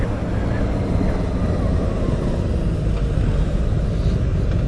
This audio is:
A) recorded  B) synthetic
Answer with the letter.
A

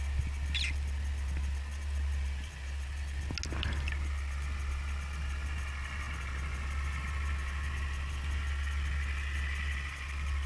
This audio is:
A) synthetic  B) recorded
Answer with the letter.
B